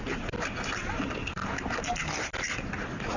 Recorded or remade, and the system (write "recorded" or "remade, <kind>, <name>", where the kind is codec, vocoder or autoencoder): recorded